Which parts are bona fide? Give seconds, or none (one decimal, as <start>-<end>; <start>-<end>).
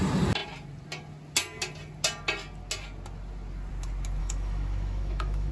0.0-4.2